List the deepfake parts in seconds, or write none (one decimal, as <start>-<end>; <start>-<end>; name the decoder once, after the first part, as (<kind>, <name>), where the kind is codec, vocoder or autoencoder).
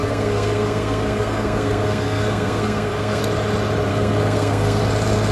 0.0-3.2 (codec, SNAC); 3.9-4.8